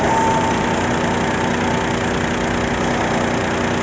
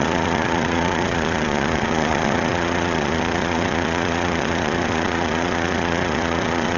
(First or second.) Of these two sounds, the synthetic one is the second